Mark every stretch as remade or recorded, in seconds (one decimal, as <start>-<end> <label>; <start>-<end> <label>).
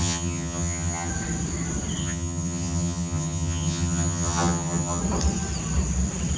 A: 0.0-1.1 remade; 1.1-2.0 recorded; 2.0-5.0 remade; 5.0-6.4 recorded